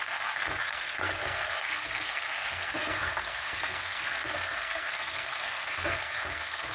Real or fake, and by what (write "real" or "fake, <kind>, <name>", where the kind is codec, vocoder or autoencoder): fake, codec, SNAC